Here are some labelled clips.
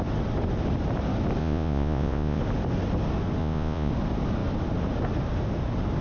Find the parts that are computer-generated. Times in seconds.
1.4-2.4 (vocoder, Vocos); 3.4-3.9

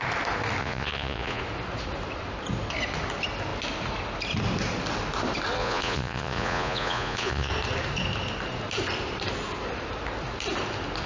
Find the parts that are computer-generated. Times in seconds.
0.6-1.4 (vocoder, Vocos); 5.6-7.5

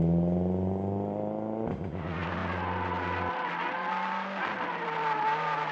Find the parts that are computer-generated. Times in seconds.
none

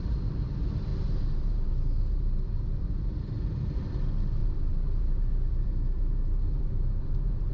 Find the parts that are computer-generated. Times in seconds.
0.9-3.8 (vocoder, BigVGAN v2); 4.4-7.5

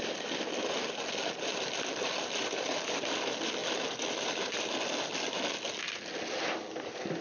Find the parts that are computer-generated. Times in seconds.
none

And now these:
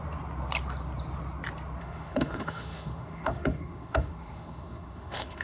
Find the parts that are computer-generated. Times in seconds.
1.8-5.4 (autoencoder, DAC-VAE)